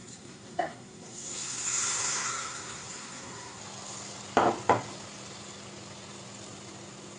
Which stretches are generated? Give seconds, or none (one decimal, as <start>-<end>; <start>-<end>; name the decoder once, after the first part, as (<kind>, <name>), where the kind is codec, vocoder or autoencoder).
0.0-3.6 (codec, SNAC)